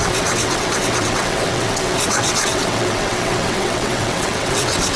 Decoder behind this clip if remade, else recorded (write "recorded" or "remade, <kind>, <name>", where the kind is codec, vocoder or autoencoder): remade, vocoder, WaveNeXt